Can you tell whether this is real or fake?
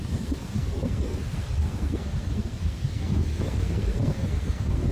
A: fake